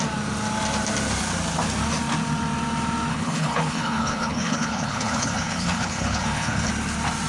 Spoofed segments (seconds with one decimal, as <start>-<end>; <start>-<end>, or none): 3.1-6.7